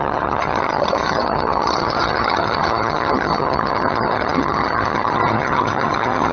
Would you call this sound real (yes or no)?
no